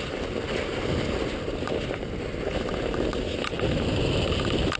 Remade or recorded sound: recorded